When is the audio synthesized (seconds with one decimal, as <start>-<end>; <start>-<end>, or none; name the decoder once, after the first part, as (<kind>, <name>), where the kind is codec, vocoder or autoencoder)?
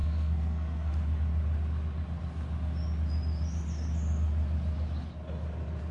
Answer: 0.0-0.9 (codec, SNAC)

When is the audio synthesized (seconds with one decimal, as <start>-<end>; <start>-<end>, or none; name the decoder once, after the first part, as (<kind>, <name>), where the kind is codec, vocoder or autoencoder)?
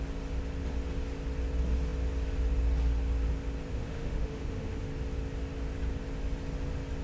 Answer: 3.7-4.8 (autoencoder, DAC-VAE)